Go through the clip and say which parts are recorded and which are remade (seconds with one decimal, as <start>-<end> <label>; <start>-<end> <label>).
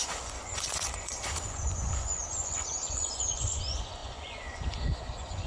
0.0-5.5 remade